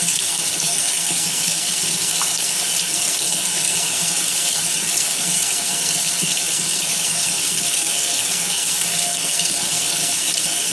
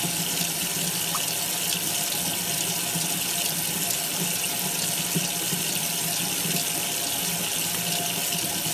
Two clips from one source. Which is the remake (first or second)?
first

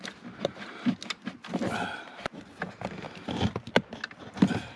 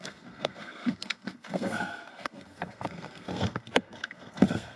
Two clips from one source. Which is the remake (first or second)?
second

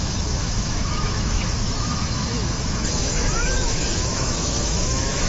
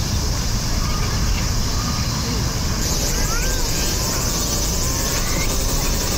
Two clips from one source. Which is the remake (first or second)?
first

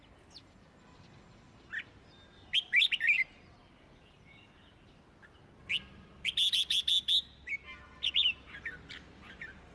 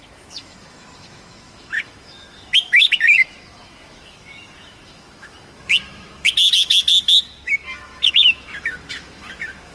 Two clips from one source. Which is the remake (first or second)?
second